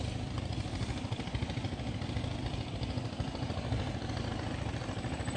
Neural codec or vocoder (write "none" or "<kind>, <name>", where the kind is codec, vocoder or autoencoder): vocoder, BigVGAN v2